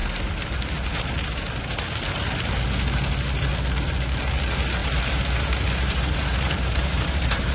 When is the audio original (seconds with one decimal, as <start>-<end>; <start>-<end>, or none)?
0.0-4.8